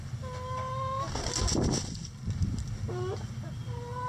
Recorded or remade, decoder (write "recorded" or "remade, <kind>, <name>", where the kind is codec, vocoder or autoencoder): recorded